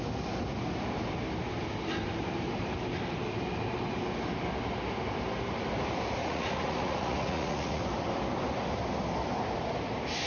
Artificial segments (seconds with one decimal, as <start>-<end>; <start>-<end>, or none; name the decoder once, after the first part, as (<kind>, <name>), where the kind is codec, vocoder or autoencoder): 6.2-7.8 (vocoder, Vocos)